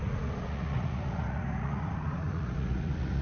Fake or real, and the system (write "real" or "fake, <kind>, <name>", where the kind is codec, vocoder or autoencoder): fake, vocoder, Vocos